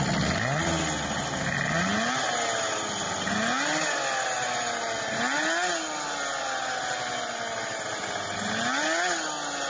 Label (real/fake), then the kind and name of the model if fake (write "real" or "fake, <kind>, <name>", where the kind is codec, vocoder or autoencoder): real